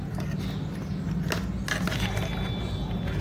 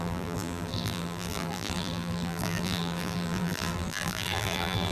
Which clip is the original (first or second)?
first